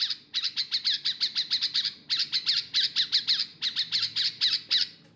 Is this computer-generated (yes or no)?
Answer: no